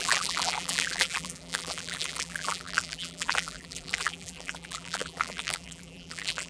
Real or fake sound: fake